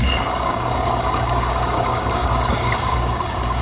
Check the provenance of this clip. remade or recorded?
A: remade